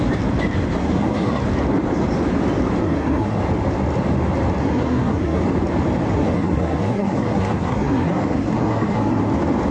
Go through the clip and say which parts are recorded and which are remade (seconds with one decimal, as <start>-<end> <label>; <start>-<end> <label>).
0.0-0.8 recorded; 0.8-1.4 remade; 1.4-2.8 recorded; 2.8-3.4 remade; 3.4-4.6 recorded; 4.6-5.4 remade; 5.4-6.1 recorded; 6.1-9.2 remade; 9.2-9.7 recorded